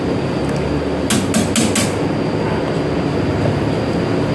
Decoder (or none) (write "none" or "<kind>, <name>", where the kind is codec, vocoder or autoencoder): none